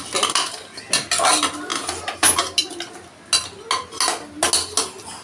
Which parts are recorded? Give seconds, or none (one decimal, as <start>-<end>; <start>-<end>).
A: 0.0-5.2